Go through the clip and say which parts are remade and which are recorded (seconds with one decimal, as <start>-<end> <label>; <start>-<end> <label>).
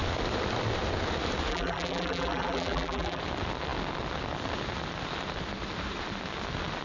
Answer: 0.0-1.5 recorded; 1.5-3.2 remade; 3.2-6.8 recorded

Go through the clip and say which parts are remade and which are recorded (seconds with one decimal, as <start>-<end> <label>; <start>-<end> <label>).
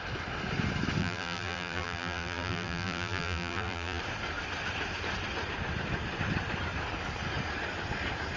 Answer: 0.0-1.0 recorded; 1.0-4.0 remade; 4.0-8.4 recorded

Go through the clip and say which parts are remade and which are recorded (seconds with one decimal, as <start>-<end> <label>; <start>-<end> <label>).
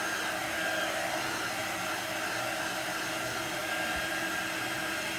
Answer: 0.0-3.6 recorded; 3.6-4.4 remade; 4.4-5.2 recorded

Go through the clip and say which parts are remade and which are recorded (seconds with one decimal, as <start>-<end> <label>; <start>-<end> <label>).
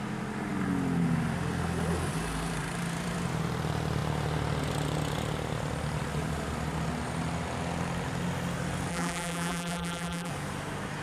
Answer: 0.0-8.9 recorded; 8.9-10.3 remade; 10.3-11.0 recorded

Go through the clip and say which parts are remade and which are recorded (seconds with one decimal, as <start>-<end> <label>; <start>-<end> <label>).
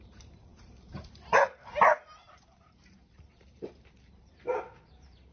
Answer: 0.0-5.3 remade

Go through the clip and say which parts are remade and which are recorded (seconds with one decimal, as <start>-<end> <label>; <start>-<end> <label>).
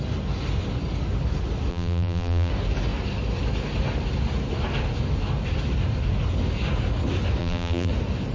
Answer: 0.0-1.7 recorded; 1.7-2.5 remade; 2.5-7.4 recorded; 7.4-7.9 remade; 7.9-8.3 recorded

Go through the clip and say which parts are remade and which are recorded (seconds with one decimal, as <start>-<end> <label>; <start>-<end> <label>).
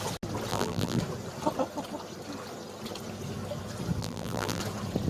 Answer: 0.0-0.5 recorded; 0.5-1.0 remade; 1.0-4.0 recorded; 4.0-4.6 remade; 4.6-5.1 recorded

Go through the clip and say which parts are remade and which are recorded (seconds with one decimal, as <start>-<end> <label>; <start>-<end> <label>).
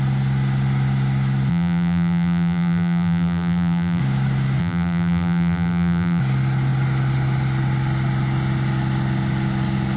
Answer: 0.0-1.5 recorded; 1.5-4.0 remade; 4.0-4.6 recorded; 4.6-6.2 remade; 6.2-10.0 recorded